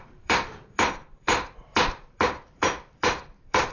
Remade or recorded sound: remade